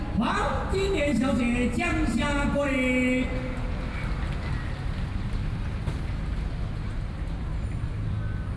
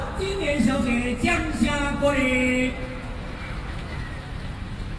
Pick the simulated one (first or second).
second